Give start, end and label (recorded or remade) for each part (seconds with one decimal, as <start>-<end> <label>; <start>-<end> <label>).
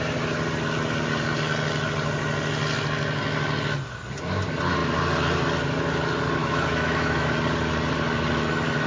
0.0-6.4 recorded; 6.4-7.3 remade; 7.3-8.9 recorded